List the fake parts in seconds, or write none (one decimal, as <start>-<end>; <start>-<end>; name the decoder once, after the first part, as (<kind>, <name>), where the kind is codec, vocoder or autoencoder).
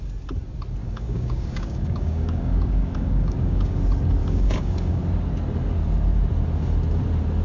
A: 0.8-3.8 (codec, DAC); 4.2-5.0